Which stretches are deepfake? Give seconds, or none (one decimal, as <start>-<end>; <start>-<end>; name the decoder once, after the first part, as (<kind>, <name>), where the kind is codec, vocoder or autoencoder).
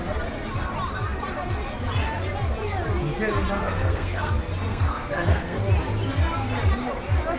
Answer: 3.6-4.3 (codec, SNAC); 4.7-5.6